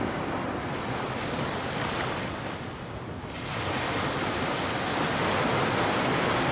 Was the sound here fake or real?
real